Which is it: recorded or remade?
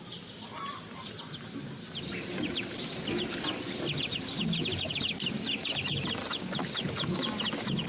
recorded